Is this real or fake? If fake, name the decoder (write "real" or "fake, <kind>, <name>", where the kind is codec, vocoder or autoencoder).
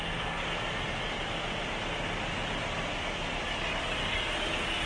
real